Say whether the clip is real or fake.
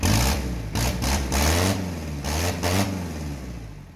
real